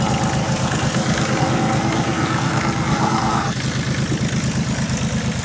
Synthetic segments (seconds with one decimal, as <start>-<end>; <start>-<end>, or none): 0.4-3.6